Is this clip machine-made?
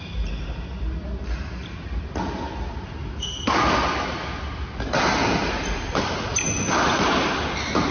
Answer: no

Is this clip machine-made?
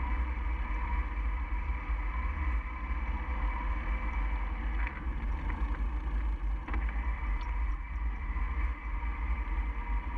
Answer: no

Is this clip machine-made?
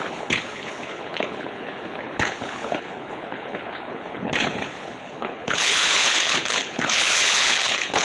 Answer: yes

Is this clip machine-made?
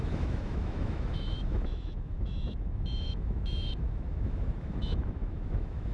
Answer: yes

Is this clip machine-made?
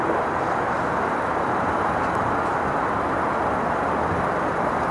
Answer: no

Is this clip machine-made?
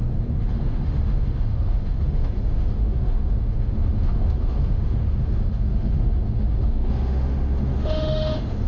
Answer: yes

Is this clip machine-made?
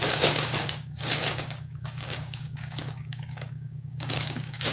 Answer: yes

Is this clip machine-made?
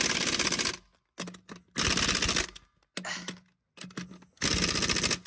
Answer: no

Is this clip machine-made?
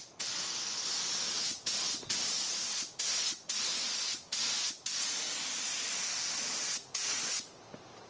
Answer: no